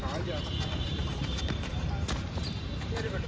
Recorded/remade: remade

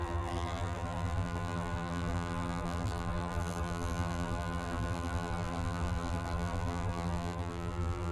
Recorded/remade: remade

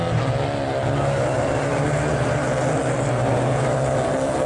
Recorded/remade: recorded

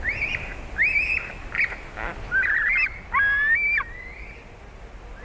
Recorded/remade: recorded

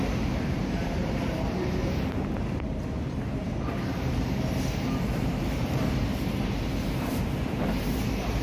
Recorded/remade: remade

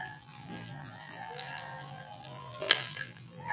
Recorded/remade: remade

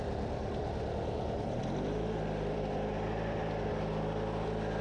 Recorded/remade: remade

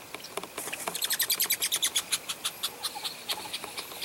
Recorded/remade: remade